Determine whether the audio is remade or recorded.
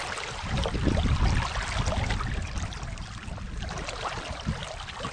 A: recorded